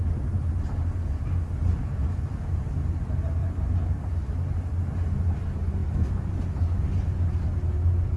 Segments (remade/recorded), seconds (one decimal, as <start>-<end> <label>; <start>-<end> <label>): 0.0-8.2 recorded